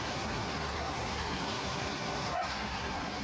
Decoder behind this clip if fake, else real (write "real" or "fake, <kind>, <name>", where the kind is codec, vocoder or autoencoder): fake, codec, SNAC